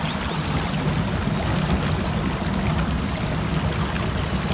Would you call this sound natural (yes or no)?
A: yes